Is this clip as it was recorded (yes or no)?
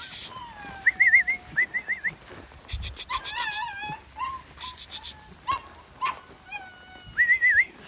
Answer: yes